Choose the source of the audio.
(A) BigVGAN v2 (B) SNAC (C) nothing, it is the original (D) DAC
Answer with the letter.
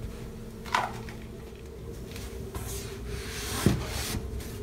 C